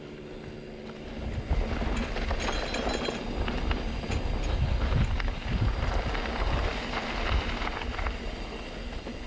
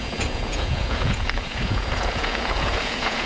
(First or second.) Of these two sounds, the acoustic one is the first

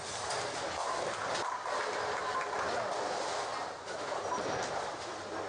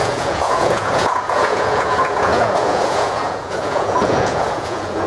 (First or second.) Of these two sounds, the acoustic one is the first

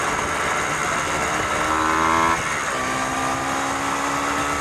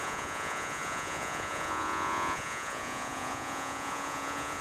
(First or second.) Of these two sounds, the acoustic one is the first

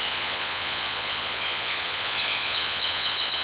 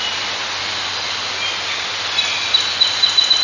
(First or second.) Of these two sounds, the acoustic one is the second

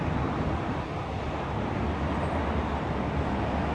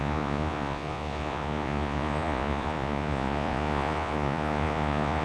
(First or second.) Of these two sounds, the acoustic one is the first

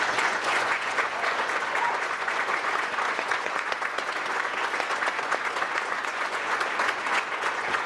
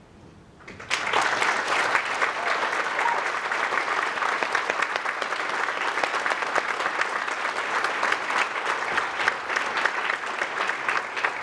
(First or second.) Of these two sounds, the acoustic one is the second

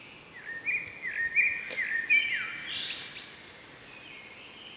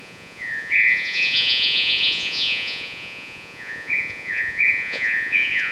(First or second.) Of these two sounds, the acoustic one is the first